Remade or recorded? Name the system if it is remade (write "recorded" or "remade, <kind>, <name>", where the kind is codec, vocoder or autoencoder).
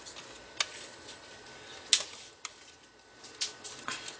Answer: recorded